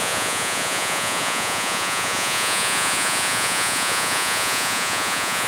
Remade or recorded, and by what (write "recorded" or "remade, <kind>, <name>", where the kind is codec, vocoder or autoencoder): remade, vocoder, Vocos